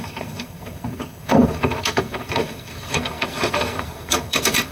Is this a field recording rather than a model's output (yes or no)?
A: no